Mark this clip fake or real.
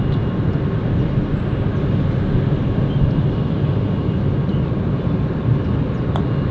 real